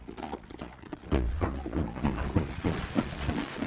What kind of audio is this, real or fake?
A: fake